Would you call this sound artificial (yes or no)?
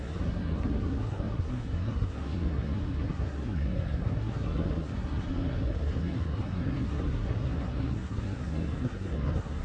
yes